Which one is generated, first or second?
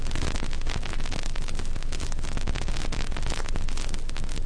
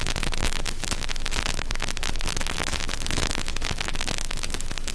second